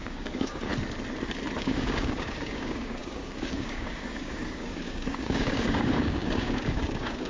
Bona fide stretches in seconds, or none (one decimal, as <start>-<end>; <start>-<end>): 0.7-1.6